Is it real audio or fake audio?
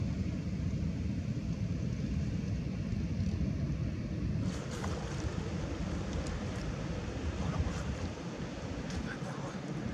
real